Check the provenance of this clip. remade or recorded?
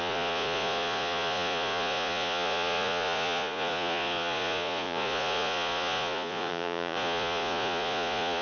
remade